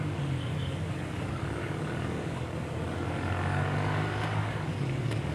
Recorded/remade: remade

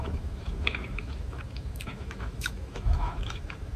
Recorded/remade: remade